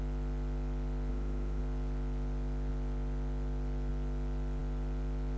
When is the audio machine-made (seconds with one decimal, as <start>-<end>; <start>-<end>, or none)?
1.1-1.6